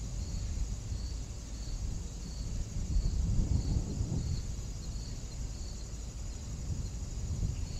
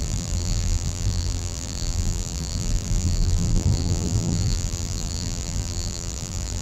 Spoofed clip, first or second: second